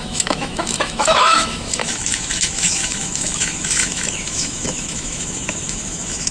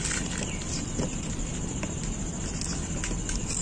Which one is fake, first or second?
first